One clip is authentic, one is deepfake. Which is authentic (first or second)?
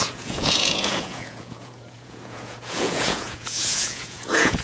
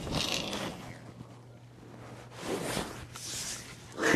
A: second